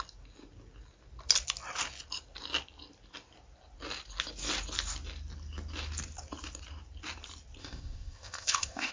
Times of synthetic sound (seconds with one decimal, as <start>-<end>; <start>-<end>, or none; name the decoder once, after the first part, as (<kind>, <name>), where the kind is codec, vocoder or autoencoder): 7.6-8.9 (codec, ZipCodec)